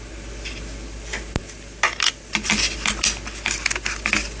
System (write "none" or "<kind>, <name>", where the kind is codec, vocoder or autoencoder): none